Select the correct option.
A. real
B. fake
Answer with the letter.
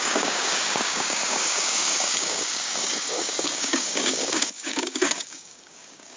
B